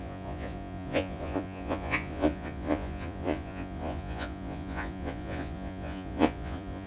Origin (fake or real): fake